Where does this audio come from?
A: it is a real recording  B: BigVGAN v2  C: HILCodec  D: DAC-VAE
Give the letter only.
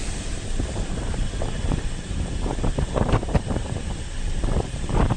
B